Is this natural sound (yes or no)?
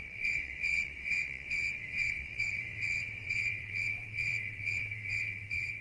no